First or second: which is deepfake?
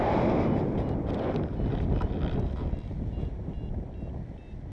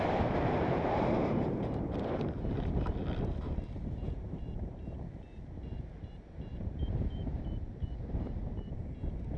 second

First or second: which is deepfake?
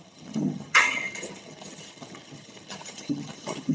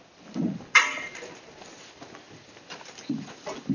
first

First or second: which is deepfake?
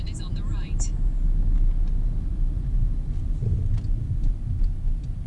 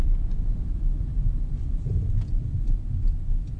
second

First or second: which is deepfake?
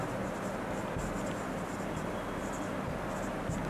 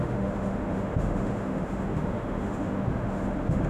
second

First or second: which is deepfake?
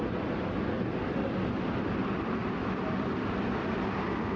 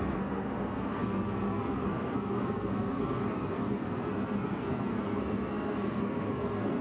second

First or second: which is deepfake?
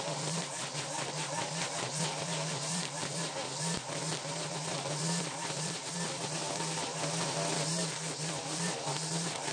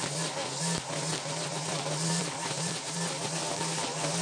first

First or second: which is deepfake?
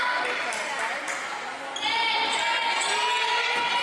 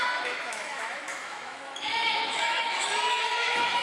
second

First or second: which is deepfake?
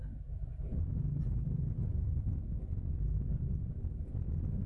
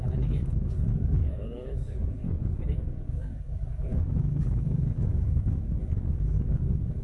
second